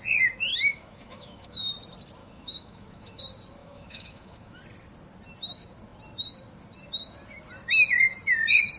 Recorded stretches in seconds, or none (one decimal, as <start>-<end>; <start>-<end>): 0.0-0.5; 1.7-2.2; 3.2-3.6; 4.6-8.8